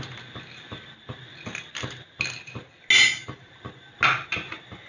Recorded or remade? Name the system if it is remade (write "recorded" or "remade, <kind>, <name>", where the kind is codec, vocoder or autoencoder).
recorded